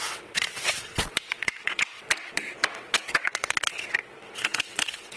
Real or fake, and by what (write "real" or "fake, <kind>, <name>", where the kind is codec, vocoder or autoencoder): fake, vocoder, WaveNeXt